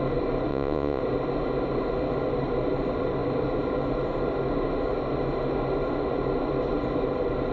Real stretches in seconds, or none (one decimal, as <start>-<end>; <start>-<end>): 0.0-0.5; 1.0-7.5